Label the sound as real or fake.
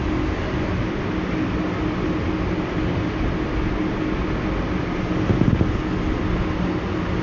real